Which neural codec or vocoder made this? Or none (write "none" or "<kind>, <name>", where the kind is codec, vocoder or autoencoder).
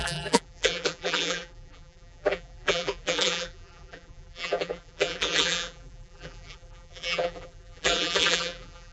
vocoder, BigVGAN v2